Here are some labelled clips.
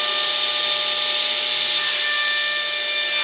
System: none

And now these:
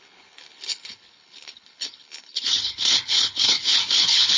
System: codec, HILCodec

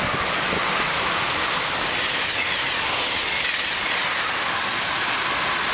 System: none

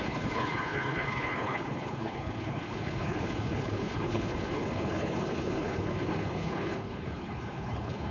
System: codec, HILCodec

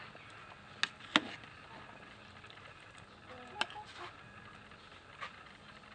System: none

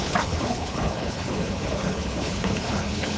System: codec, HILCodec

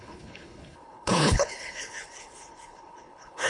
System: codec, HILCodec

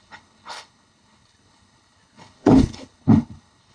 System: codec, HILCodec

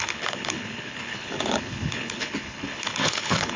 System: codec, HILCodec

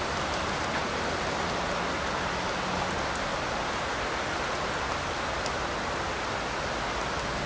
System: none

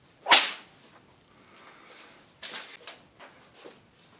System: none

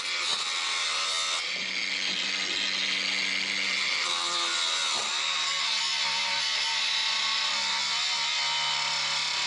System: none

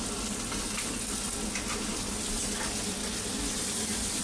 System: none